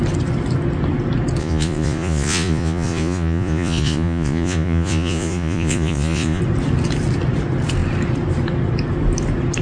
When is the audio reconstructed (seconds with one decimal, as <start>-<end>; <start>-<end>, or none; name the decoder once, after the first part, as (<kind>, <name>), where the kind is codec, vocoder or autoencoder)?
1.4-6.4 (vocoder, Vocos)